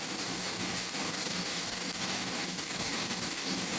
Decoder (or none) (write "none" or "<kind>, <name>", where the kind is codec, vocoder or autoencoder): codec, DAC